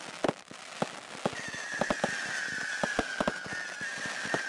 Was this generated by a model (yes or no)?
no